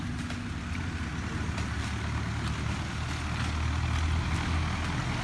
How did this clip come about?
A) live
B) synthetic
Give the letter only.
A